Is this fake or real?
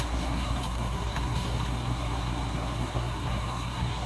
fake